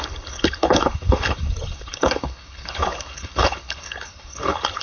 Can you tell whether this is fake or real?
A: fake